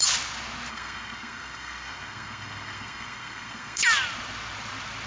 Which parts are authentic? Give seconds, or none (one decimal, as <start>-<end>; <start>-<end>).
0.0-0.7; 3.8-5.1